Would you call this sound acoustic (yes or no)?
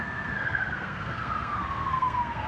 no